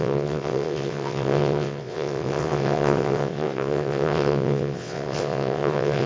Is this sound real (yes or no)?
no